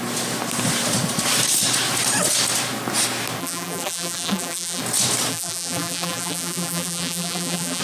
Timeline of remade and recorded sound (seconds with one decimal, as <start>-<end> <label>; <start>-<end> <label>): 0.0-3.4 recorded; 3.4-4.8 remade; 4.8-5.3 recorded; 5.3-7.8 remade